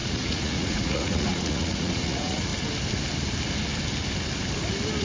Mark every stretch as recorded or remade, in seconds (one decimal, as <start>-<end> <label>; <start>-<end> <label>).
0.0-2.5 remade; 2.5-5.0 recorded